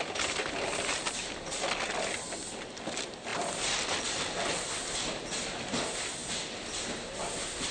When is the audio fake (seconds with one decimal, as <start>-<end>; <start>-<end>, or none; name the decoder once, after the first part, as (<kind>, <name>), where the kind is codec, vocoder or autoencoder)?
none